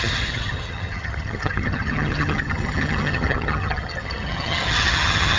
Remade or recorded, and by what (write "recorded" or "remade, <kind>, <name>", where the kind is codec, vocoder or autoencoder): remade, vocoder, HiFi-GAN